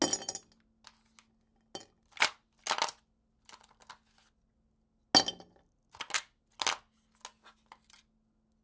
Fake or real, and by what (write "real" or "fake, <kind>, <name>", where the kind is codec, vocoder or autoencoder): real